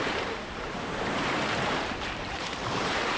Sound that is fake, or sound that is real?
fake